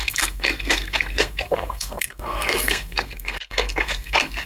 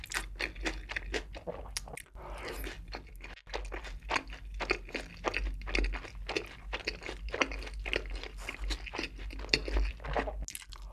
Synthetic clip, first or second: first